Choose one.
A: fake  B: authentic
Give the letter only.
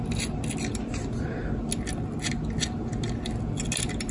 B